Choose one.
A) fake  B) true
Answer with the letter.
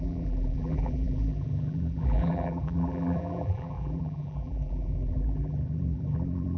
A